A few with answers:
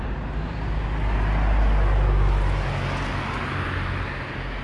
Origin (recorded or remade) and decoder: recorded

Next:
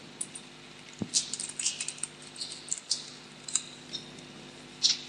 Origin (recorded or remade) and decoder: recorded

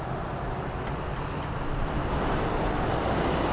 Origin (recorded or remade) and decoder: recorded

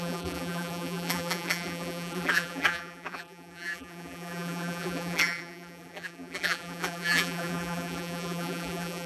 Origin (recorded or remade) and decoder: remade, vocoder, BigVGAN v2